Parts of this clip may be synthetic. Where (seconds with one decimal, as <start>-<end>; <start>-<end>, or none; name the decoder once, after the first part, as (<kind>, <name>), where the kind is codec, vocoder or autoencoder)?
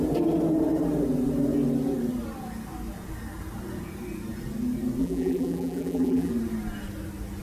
5.0-6.3 (vocoder, BigVGAN v2)